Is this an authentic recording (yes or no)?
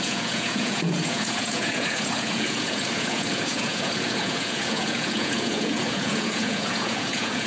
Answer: no